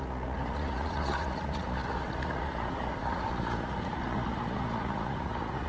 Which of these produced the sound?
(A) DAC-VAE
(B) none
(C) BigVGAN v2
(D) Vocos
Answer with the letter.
D